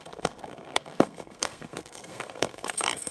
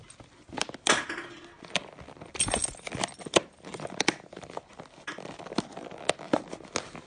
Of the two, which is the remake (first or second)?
first